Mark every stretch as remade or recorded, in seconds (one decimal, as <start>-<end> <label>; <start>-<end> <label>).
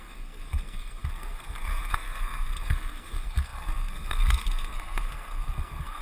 0.0-6.0 remade